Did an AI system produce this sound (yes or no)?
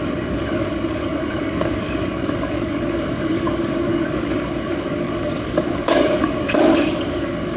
yes